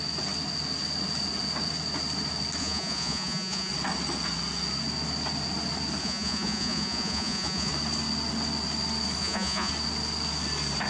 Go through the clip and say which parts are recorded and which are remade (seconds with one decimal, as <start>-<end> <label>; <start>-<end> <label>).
0.0-2.6 recorded; 2.6-3.7 remade; 3.7-6.0 recorded; 6.0-7.7 remade; 7.7-9.2 recorded; 9.2-9.7 remade; 9.7-10.9 recorded